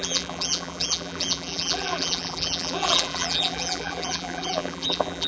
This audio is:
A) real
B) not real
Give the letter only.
B